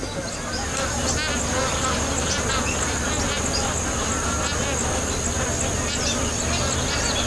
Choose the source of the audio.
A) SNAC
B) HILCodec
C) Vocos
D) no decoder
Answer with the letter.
D